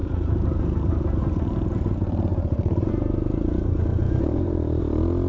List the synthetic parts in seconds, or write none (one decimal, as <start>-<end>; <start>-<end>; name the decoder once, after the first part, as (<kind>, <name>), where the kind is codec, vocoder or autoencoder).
0.0-0.6 (vocoder, BigVGAN v2); 2.3-2.9; 3.9-4.8